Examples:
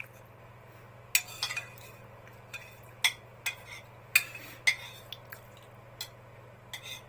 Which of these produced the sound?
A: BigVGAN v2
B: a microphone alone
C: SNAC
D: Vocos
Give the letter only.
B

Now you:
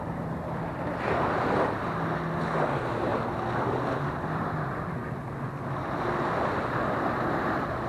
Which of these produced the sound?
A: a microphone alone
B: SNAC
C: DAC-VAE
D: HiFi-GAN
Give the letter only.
A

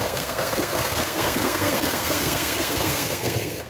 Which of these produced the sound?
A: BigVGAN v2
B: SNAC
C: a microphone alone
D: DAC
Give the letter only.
B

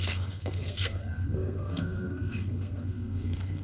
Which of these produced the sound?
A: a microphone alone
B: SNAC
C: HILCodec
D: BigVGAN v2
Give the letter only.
B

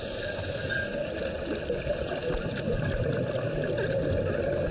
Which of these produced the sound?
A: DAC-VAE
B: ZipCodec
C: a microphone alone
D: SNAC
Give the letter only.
C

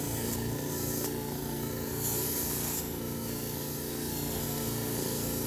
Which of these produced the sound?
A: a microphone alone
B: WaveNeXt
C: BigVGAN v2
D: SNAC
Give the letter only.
D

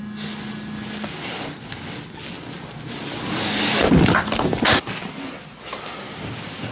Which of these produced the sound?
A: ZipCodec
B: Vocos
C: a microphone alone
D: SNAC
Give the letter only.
C